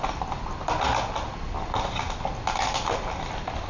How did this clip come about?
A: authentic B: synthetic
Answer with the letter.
A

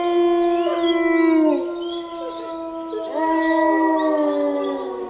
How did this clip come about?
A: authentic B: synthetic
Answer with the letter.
A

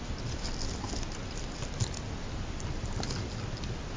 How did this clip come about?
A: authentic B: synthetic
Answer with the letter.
A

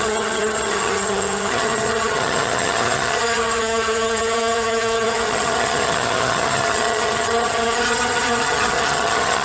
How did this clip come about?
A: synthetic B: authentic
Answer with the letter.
A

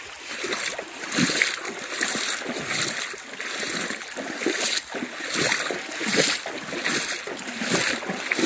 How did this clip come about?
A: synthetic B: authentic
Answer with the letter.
B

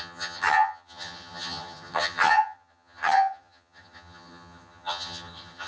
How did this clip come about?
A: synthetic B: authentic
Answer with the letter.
A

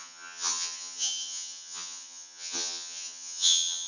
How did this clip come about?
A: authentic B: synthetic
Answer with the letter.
B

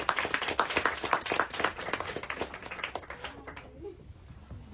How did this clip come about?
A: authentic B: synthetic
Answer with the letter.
A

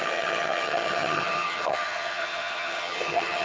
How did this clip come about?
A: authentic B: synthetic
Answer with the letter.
B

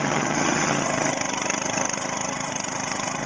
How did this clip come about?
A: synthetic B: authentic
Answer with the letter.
A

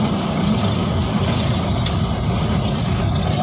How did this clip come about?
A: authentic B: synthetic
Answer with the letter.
A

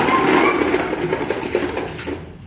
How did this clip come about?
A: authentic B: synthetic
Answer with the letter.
A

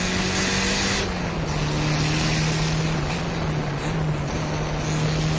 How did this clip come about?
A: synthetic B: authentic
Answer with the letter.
B